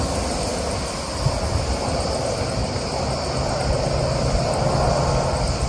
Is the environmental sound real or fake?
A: real